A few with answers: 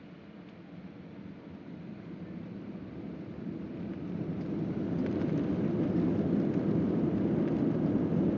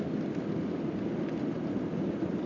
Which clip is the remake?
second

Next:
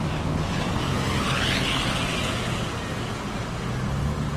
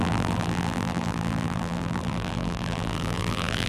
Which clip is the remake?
second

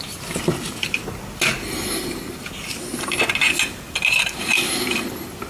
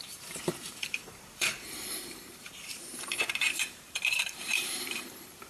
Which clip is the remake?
second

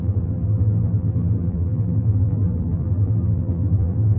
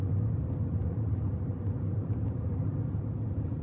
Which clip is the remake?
first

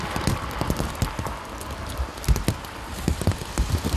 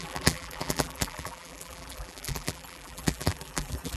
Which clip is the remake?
second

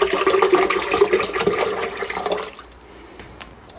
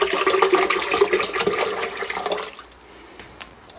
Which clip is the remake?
first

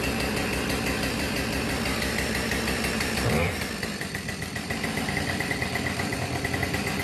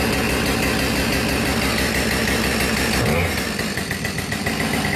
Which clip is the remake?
first